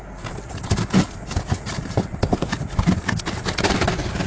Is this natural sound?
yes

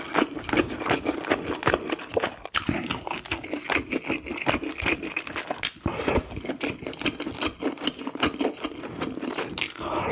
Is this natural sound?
yes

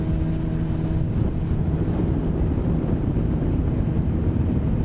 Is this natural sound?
yes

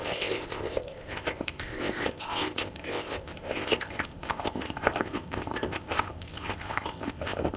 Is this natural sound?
no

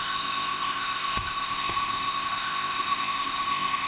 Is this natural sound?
no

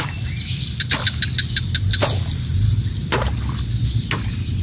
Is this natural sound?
yes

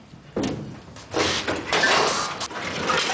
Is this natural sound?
yes